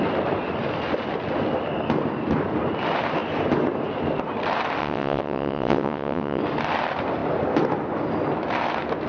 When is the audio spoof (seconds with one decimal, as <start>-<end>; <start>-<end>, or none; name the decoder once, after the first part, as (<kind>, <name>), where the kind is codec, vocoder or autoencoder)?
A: 4.8-6.4 (vocoder, WaveNeXt)